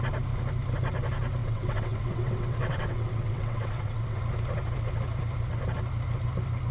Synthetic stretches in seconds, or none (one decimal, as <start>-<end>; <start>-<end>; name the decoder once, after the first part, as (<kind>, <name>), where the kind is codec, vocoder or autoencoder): 1.4-4.2 (vocoder, WaveNeXt)